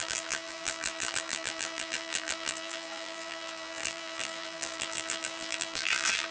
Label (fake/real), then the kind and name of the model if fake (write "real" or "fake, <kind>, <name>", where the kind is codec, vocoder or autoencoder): fake, vocoder, BigVGAN v2